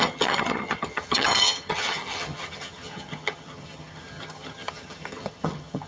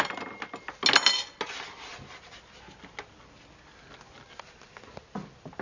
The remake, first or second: first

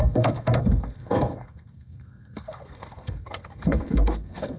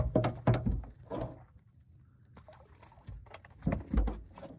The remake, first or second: first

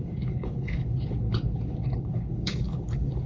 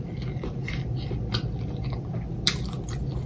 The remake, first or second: first